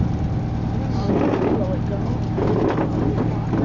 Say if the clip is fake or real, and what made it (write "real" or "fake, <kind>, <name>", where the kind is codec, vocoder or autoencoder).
real